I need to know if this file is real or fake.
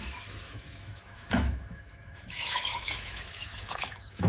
fake